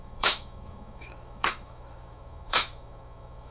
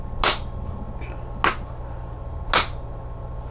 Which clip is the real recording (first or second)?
second